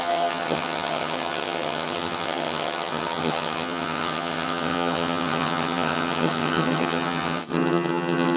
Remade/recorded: remade